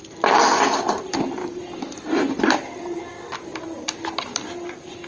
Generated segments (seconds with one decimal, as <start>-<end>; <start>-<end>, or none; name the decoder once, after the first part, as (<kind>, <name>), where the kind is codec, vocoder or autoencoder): none